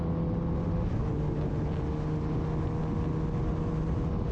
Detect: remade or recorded recorded